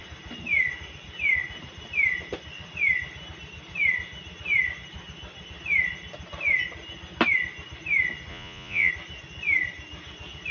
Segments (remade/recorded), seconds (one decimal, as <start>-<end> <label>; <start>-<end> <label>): 0.0-8.3 recorded; 8.3-8.9 remade; 8.9-10.5 recorded

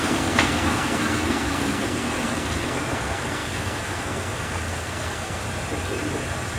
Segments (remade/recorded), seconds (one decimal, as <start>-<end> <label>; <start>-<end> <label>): 0.0-5.4 remade; 5.4-6.6 recorded

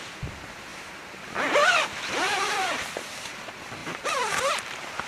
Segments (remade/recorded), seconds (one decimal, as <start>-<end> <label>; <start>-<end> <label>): 0.0-0.7 recorded; 0.7-3.0 remade; 3.0-3.8 recorded; 3.8-4.5 remade; 4.5-5.1 recorded

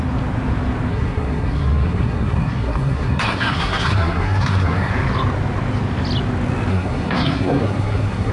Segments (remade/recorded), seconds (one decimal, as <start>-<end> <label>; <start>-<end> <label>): 0.0-0.9 recorded; 0.9-4.9 remade; 4.9-6.7 recorded; 6.7-8.3 remade